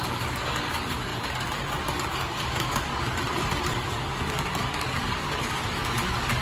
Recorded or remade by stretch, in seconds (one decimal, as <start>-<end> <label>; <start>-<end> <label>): 0.0-2.9 remade; 2.9-3.7 recorded; 3.7-6.4 remade